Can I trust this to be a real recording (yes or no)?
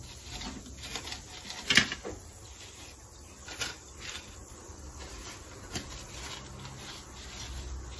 yes